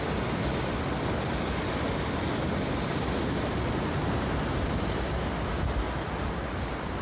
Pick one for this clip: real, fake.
real